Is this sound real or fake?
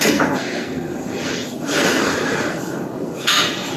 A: fake